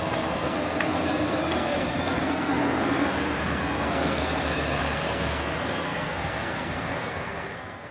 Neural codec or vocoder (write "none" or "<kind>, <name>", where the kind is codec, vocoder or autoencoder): codec, SNAC